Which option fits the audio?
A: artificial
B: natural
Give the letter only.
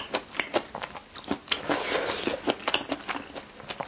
A